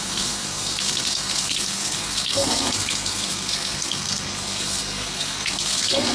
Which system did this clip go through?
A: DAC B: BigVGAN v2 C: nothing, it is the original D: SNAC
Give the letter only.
D